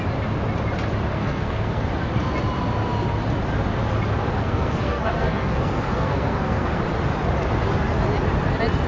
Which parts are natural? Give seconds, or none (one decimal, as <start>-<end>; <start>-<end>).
0.0-1.1; 1.9-4.3; 6.8-8.9